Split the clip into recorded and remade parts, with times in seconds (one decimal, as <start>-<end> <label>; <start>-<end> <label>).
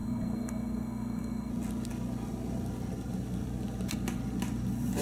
0.0-1.5 remade; 1.5-5.0 recorded